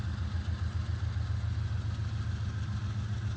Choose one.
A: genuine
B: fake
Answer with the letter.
A